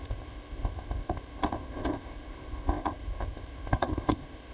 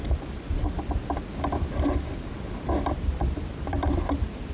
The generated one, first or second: first